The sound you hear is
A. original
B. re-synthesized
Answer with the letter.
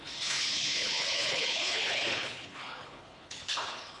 B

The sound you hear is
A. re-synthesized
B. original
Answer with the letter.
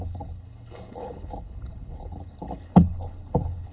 A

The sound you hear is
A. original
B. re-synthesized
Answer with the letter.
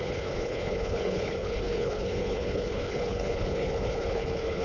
B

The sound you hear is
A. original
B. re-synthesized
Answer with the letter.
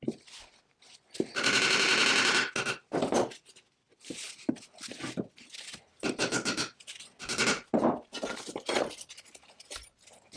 A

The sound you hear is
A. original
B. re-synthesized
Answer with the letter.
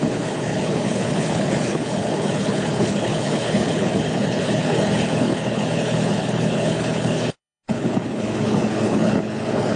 B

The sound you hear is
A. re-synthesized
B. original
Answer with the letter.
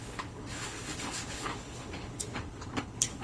A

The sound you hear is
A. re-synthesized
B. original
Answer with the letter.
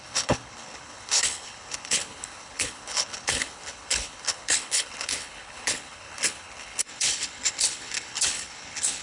A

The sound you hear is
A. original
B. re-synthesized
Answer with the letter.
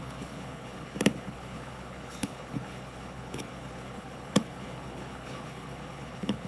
B